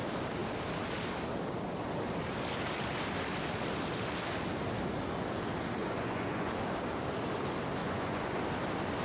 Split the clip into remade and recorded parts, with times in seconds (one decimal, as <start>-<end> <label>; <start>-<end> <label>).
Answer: 0.0-5.8 recorded; 5.8-6.6 remade; 6.6-7.8 recorded; 7.8-8.4 remade; 8.4-9.0 recorded